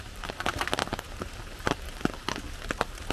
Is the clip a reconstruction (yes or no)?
no